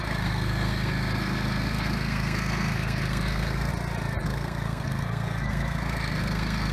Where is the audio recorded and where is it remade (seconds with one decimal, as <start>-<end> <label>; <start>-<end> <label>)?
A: 0.0-3.7 remade; 3.7-4.2 recorded; 4.2-6.7 remade